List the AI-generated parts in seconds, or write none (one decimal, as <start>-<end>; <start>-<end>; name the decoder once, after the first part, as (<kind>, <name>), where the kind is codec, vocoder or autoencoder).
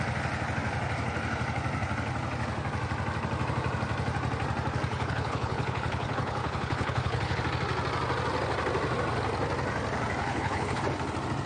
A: 4.9-7.4 (codec, HILCodec); 10.2-10.8